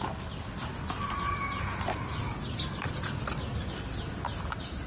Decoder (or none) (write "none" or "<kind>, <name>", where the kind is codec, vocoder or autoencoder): none